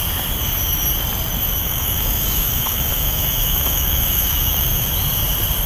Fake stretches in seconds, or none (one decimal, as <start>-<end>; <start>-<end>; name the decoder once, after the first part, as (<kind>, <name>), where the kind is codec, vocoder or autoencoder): 1.6-4.9 (autoencoder, DAC-VAE)